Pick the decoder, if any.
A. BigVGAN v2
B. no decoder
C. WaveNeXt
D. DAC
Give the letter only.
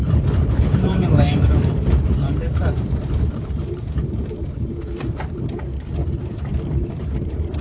A